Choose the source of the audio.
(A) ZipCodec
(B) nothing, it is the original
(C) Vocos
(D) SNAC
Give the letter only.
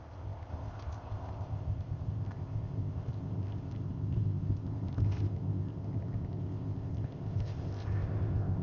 A